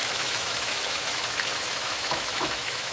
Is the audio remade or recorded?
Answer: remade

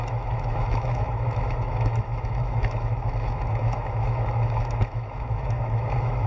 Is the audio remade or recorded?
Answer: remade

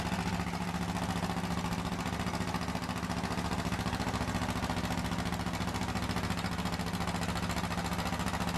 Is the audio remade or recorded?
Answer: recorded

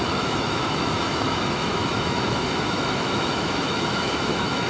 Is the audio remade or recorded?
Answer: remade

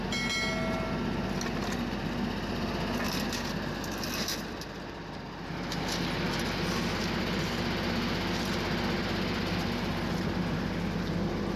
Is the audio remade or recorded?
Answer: recorded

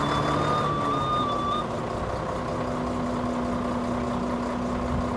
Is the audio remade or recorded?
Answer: recorded